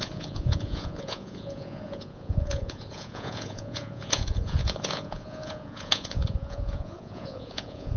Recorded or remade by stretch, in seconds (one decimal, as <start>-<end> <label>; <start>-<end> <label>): 0.0-8.0 remade